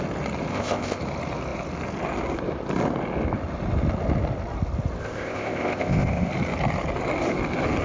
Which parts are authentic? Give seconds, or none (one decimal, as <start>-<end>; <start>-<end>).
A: 0.0-0.5; 1.0-5.0; 6.3-7.8